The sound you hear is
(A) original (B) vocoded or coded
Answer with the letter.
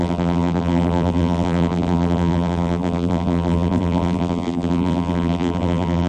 B